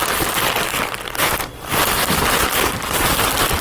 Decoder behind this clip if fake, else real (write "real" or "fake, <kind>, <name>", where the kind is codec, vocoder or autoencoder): real